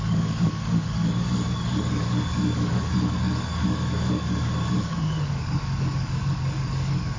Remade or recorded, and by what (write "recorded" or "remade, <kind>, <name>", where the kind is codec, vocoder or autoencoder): remade, codec, DAC